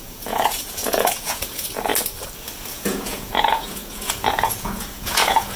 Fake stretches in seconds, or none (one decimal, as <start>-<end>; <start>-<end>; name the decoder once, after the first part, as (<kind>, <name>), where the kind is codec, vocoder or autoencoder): 0.0-1.9 (vocoder, Vocos); 2.7-5.6